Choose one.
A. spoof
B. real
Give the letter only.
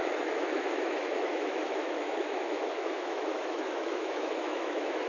A